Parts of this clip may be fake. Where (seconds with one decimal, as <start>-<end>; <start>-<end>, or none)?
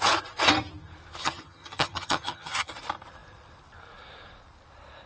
1.2-2.7